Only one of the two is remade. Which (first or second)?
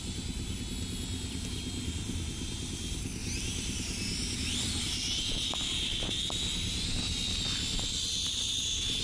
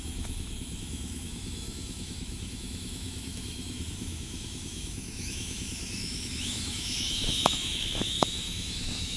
second